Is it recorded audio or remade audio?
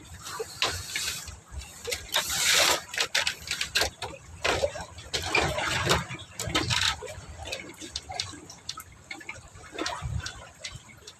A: recorded